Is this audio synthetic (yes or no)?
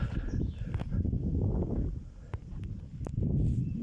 no